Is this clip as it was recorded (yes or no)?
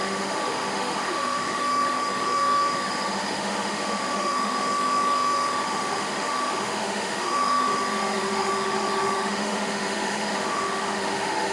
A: no